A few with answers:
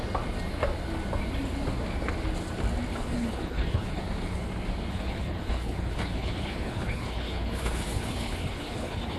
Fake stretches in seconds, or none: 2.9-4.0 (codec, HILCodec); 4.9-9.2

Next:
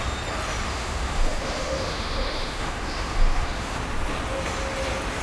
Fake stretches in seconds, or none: 0.7-3.8 (autoencoder, DAC-VAE)

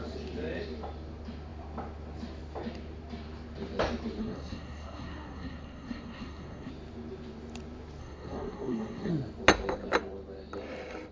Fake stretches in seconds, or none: 4.2-6.7 (codec, SNAC); 8.0-9.1